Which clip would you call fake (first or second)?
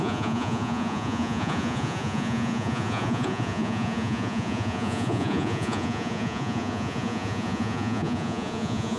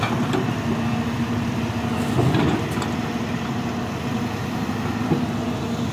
first